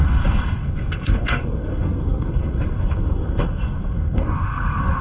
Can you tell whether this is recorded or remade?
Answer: remade